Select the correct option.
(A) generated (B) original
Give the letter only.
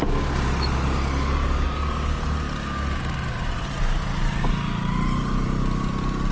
B